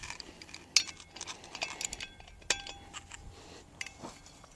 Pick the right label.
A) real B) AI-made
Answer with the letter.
A